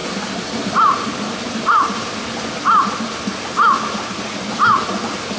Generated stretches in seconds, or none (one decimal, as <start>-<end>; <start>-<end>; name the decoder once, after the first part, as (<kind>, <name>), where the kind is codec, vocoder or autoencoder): none